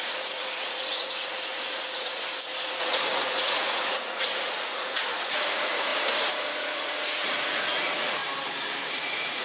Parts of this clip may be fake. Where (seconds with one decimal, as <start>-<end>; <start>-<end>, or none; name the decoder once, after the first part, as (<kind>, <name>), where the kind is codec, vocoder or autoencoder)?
0.0-8.2 (vocoder, Vocos); 8.9-9.4